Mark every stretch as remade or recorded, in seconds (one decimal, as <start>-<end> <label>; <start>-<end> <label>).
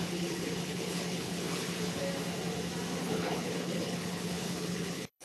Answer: 0.0-2.0 remade; 2.0-3.0 recorded; 3.0-5.2 remade